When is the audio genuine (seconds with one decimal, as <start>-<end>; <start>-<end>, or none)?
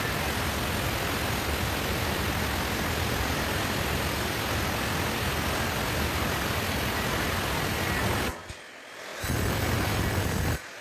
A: 0.0-10.8